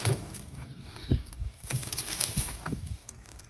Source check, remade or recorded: remade